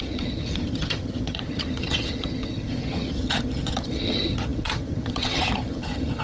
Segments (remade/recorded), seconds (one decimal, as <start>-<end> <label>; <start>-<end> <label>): 0.0-6.2 remade